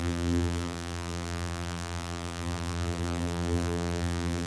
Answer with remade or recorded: remade